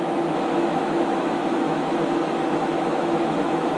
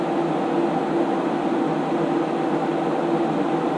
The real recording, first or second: second